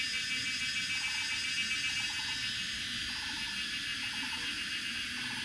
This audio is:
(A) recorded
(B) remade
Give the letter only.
A